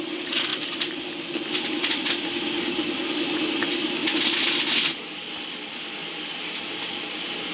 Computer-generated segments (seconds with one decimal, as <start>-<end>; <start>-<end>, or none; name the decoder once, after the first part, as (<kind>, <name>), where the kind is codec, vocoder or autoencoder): 0.5-2.2 (vocoder, BigVGAN v2)